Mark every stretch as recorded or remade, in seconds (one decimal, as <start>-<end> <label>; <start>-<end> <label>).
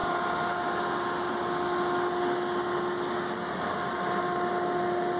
0.0-5.2 recorded